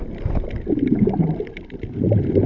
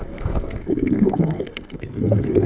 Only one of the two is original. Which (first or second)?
first